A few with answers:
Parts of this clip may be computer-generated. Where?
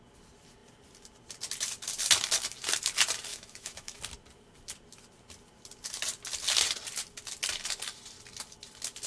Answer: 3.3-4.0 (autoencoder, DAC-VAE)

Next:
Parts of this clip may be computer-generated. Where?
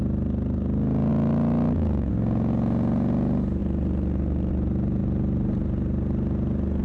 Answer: 1.1-2.1 (autoencoder, DAC-VAE)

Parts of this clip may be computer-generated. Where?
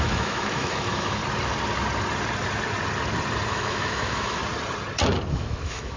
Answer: 0.0-1.2 (autoencoder, DAC-VAE); 3.5-4.4; 5.3-6.0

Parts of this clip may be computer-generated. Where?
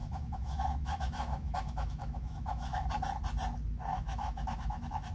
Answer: 0.0-2.9 (autoencoder, DAC-VAE); 3.9-5.1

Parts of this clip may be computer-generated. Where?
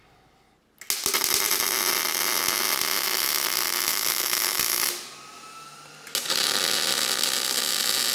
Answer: 3.9-4.6 (autoencoder, DAC-VAE)